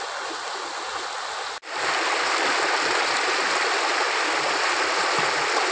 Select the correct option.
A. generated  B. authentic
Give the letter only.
B